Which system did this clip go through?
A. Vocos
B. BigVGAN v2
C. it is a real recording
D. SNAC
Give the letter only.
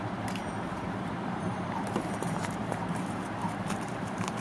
B